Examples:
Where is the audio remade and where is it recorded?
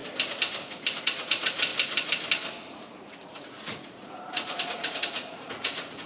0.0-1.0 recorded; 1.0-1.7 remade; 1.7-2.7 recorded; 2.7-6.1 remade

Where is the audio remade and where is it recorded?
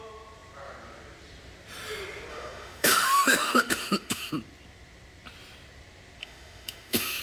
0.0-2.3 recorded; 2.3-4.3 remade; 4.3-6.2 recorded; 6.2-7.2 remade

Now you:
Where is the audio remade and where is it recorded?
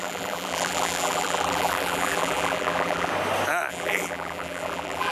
0.0-3.1 remade; 3.1-3.7 recorded; 3.7-5.1 remade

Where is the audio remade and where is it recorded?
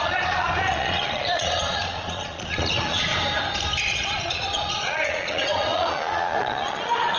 0.0-3.1 remade; 3.1-3.8 recorded; 3.8-7.2 remade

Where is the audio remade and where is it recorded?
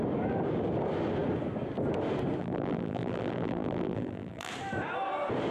0.0-2.4 recorded; 2.4-4.5 remade; 4.5-5.5 recorded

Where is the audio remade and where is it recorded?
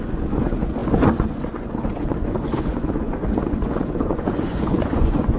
0.0-5.4 remade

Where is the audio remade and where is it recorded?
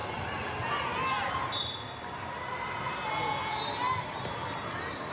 0.0-5.1 recorded